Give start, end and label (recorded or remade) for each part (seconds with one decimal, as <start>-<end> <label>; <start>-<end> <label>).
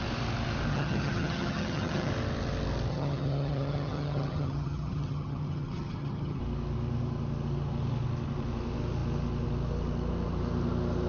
0.0-0.7 recorded; 0.7-2.1 remade; 2.1-2.9 recorded; 2.9-6.4 remade; 6.4-11.1 recorded